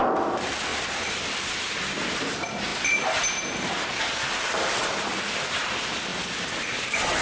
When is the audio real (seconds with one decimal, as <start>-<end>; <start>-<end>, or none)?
2.7-4.0

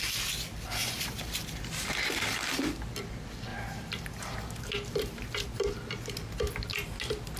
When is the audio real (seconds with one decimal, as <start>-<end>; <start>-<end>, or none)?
0.0-0.8; 1.6-3.5; 5.7-7.4

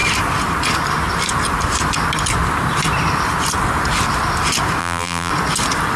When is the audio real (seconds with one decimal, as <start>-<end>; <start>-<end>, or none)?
0.0-4.8; 5.3-6.0

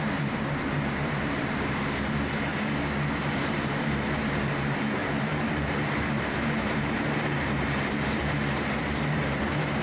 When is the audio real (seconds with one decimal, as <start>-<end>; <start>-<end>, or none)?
2.5-3.2

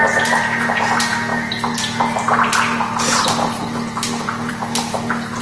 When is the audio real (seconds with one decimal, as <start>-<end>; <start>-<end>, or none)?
0.0-5.4

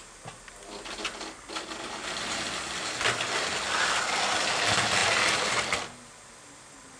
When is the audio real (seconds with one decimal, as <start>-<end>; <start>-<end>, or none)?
0.0-7.0

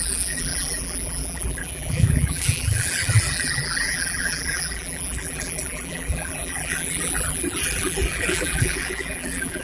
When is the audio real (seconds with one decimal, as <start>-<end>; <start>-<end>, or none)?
none